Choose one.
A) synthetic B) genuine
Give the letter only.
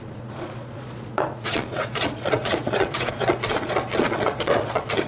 A